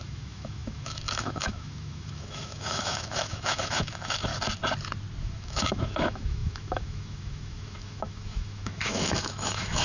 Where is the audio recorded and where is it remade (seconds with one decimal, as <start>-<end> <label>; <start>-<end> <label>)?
0.0-4.3 remade; 4.3-5.2 recorded; 5.2-9.8 remade